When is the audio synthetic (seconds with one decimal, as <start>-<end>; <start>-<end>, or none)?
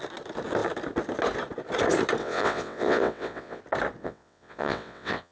2.2-3.6; 4.0-5.3